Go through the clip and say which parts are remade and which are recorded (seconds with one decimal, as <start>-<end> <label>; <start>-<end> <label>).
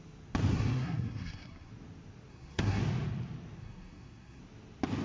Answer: 0.0-0.5 recorded; 0.5-1.7 remade; 1.7-2.3 recorded; 2.3-2.8 remade; 2.8-3.6 recorded; 3.6-4.4 remade; 4.4-5.0 recorded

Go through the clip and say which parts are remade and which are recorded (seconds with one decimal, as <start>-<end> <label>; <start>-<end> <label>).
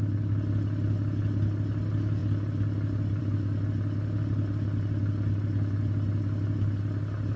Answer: 0.0-7.4 recorded